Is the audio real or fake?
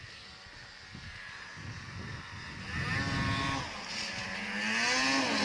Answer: real